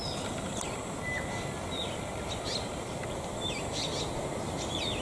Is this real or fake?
real